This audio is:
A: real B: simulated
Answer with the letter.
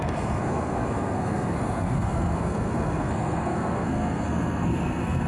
B